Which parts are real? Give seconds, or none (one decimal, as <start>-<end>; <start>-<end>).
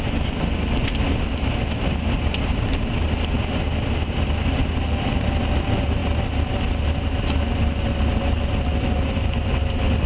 0.0-10.1